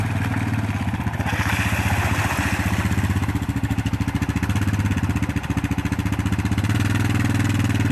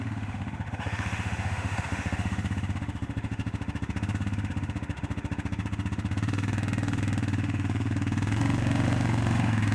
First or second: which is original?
first